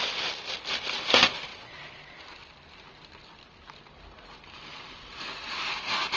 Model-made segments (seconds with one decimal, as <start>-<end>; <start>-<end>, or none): none